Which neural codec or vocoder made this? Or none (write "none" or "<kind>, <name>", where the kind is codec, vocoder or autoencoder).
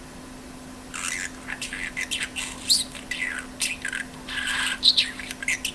none